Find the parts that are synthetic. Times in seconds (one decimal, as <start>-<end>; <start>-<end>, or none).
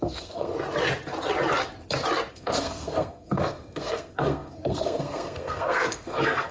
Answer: 0.0-0.5; 2.3-6.5